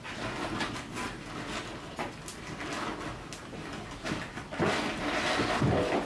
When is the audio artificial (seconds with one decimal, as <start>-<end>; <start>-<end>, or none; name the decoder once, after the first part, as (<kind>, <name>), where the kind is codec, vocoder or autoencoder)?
none